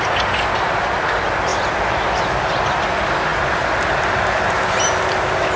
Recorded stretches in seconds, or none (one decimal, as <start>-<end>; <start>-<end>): 0.0-5.6